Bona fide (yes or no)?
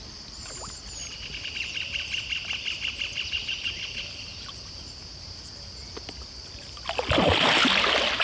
yes